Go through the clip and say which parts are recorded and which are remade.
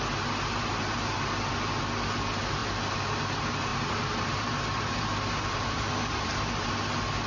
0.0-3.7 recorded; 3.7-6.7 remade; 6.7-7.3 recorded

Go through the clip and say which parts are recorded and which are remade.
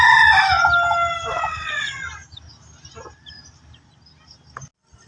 0.0-1.3 recorded; 1.3-2.0 remade; 2.0-5.1 recorded